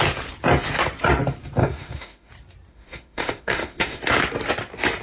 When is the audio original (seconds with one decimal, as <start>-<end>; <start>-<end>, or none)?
0.0-1.6; 2.3-2.7; 4.0-5.0

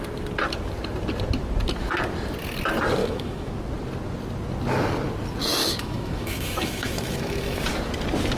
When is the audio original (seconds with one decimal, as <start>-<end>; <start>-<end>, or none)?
0.0-3.0; 3.5-5.6; 7.6-8.4

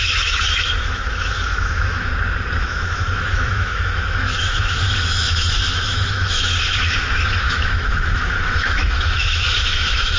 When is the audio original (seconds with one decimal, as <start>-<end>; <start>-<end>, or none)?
2.1-2.6

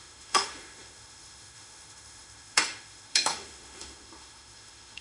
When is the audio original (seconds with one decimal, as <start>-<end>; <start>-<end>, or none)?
none

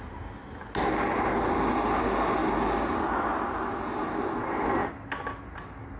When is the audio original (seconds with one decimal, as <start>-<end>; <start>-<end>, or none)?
0.0-6.0

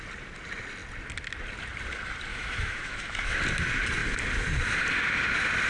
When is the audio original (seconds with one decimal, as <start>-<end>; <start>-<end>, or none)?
0.0-2.3; 3.4-5.7

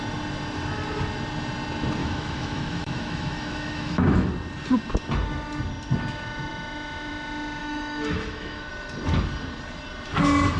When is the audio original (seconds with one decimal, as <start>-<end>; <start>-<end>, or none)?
0.0-2.0; 4.3-7.6; 8.7-10.6